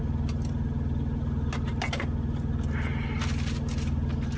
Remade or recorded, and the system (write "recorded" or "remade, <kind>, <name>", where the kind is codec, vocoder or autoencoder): recorded